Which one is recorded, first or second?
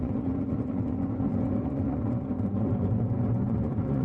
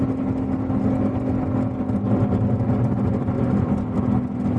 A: second